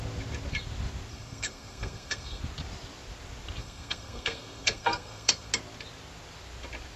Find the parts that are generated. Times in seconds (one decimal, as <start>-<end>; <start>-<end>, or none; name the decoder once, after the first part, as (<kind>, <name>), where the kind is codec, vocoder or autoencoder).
1.1-2.4 (codec, SNAC); 3.6-5.5